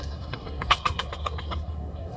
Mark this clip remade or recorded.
remade